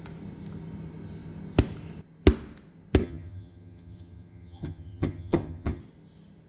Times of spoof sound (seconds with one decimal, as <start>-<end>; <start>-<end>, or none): 3.0-5.8